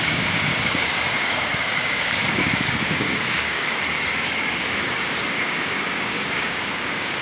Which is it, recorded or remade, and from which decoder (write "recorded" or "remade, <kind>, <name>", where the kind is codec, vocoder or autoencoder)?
remade, codec, DAC